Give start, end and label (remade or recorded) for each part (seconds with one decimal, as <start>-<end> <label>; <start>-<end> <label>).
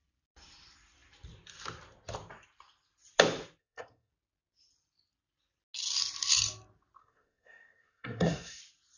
0.0-3.6 recorded; 3.6-4.1 remade; 4.1-7.0 recorded; 7.0-8.6 remade; 8.6-9.0 recorded